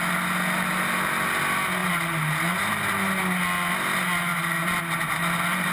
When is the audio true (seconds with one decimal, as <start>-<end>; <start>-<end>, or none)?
0.0-5.7